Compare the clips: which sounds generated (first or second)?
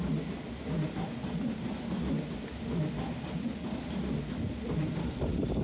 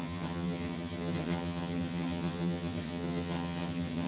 second